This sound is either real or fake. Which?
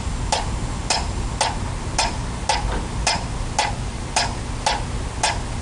real